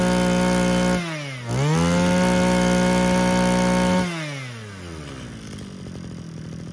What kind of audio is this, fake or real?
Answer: real